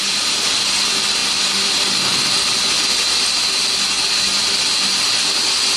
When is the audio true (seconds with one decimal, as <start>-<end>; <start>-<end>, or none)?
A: 0.0-5.8